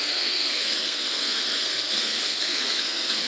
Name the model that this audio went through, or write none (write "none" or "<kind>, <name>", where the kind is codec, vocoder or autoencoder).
codec, SNAC